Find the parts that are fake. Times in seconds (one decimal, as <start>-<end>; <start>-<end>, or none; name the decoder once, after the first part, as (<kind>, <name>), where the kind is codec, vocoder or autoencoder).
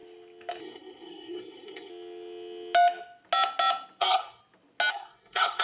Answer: 0.6-1.9 (codec, SNAC); 4.0-4.4; 4.9-5.6